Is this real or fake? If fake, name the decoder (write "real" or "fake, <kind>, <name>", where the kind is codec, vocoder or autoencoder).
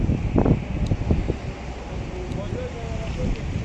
real